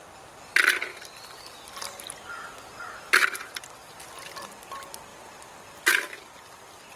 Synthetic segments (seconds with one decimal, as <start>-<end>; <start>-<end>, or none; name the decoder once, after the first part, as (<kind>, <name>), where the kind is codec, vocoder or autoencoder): 0.9-3.7 (vocoder, BigVGAN v2); 5.1-6.2

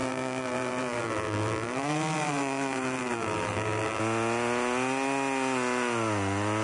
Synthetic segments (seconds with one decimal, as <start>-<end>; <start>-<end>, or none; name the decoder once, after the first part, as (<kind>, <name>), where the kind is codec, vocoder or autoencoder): 0.0-4.0 (vocoder, BigVGAN v2)

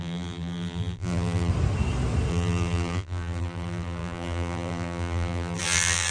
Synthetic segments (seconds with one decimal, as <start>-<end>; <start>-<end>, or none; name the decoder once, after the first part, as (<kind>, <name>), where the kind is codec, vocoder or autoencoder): 0.0-1.5 (vocoder, BigVGAN v2); 2.3-6.1

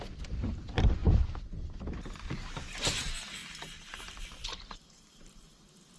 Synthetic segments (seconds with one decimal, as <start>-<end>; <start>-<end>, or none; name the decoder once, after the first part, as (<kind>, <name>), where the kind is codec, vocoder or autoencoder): 3.4-5.2 (vocoder, BigVGAN v2)